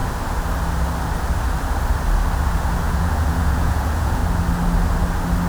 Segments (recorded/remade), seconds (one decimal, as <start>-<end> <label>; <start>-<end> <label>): 0.0-2.5 recorded; 2.5-4.2 remade; 4.2-5.5 recorded